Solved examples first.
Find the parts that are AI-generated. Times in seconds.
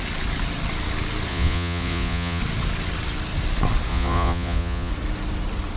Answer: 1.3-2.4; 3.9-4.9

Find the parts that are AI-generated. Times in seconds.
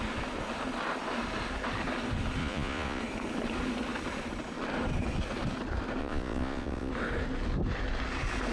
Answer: 2.4-3.0; 6.0-6.9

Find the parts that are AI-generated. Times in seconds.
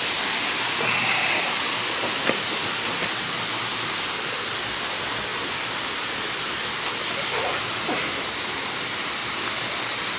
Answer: none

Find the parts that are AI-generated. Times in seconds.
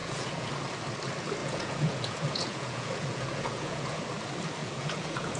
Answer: 0.0-0.5; 1.4-4.0; 4.6-5.4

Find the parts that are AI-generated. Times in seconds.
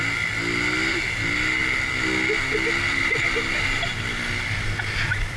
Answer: none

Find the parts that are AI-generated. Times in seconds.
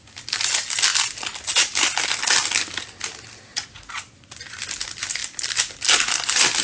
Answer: 3.5-4.0